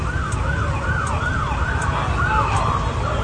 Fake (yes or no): no